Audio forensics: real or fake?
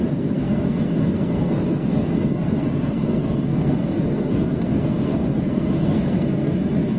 fake